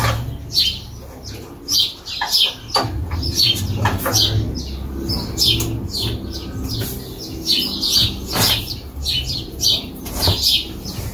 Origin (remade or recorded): recorded